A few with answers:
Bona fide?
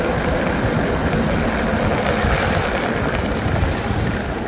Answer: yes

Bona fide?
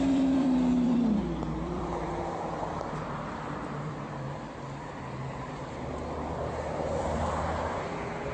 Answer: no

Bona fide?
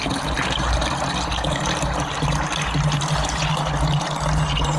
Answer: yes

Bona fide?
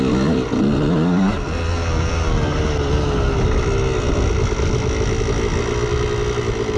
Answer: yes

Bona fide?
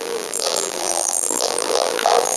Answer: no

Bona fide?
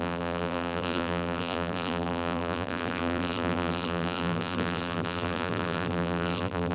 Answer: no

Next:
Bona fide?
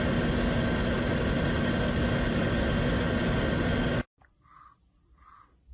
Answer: yes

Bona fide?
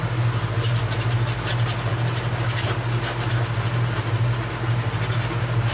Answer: yes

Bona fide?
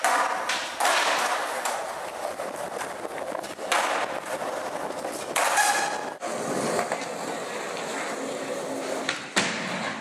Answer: yes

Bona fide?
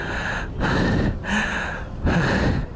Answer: yes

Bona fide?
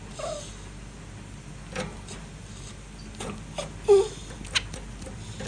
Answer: yes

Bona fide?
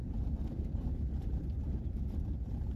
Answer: no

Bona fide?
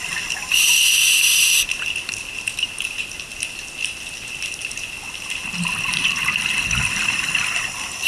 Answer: yes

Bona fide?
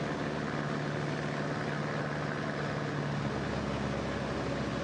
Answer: yes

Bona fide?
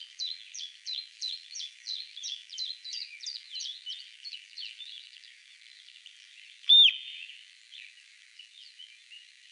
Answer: no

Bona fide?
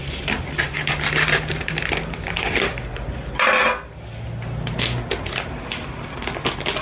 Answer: no